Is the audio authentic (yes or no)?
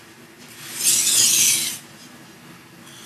yes